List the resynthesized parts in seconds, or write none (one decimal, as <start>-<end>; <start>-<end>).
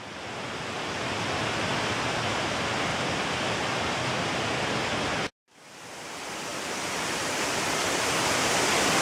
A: none